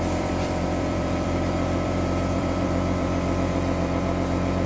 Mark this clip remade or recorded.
remade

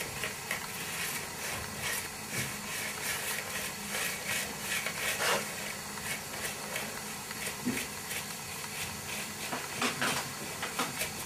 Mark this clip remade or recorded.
remade